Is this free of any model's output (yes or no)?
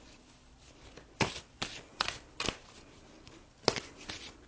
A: yes